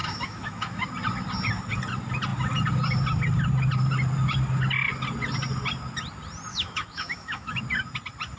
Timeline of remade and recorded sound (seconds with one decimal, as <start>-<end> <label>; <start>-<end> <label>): 0.0-0.9 remade; 0.9-6.5 recorded; 6.5-7.6 remade; 7.6-8.4 recorded